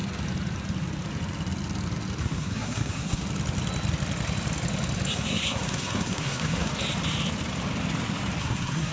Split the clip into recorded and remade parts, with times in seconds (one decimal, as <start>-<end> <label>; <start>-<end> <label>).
0.0-2.2 recorded; 2.2-3.2 remade; 3.2-5.1 recorded; 5.1-6.7 remade; 6.7-8.4 recorded; 8.4-8.9 remade